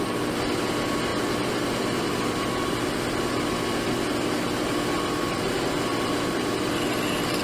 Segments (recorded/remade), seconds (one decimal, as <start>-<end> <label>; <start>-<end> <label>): 0.0-7.4 recorded